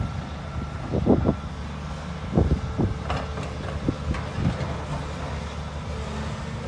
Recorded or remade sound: recorded